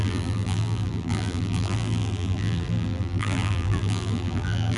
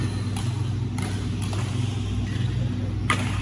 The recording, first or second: second